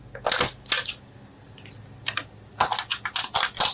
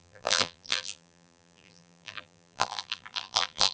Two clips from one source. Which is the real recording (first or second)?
first